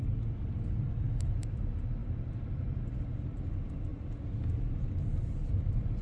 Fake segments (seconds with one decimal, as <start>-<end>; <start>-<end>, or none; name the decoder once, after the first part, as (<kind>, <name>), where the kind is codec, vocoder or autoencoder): none